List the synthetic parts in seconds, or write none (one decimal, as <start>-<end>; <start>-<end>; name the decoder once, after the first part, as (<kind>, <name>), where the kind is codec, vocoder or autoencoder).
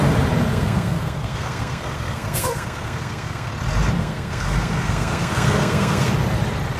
0.5-3.5 (codec, SNAC); 4.0-6.1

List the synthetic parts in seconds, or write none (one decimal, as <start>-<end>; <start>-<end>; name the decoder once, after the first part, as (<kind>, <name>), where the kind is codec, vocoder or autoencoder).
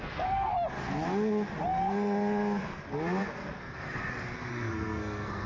0.0-0.5 (codec, SNAC); 3.3-4.0; 4.5-5.5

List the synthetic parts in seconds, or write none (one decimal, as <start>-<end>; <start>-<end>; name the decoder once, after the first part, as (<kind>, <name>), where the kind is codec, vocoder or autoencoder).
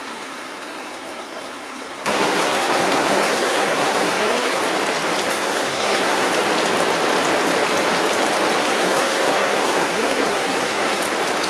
0.0-4.6 (codec, SNAC); 5.3-6.3; 8.6-11.0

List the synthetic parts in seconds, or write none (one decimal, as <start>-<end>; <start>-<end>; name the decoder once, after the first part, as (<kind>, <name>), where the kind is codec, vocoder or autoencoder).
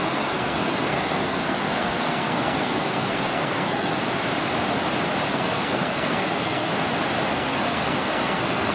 0.0-3.9 (codec, SNAC); 5.3-6.7; 7.3-8.7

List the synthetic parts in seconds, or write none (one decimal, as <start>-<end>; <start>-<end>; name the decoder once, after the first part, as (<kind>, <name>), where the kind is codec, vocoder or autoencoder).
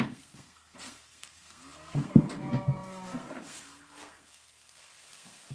0.0-5.5 (codec, SNAC)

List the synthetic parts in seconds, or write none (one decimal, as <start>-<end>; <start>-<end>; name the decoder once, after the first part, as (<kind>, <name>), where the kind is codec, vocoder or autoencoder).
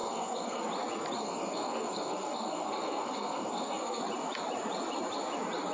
0.0-0.6 (codec, SNAC); 1.2-4.0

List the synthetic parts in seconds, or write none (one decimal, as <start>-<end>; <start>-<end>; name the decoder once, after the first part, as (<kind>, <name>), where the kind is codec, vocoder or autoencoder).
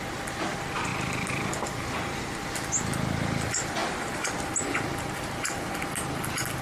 none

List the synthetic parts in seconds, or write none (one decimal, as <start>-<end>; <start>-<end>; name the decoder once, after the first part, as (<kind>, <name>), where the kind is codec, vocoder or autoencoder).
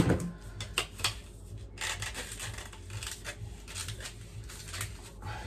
none